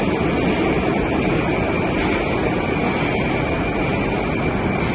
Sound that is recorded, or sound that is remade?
recorded